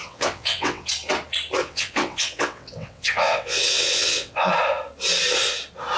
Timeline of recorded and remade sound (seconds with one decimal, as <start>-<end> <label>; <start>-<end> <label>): 0.0-0.9 remade; 0.9-1.6 recorded; 1.6-4.5 remade; 4.5-6.0 recorded